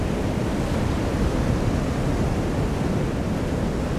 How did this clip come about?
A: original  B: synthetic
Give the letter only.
A